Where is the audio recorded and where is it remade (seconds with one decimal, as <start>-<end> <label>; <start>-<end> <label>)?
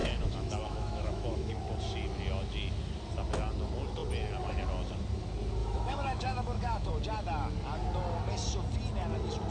0.0-1.5 remade; 1.5-5.6 recorded; 5.6-6.9 remade; 6.9-9.5 recorded